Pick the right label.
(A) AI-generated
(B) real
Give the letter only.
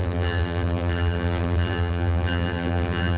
A